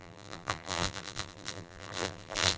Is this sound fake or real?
fake